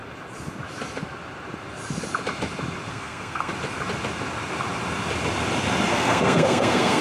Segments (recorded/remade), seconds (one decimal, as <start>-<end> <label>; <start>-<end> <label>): 0.0-2.9 recorded; 2.9-3.5 remade; 3.5-5.9 recorded; 5.9-7.0 remade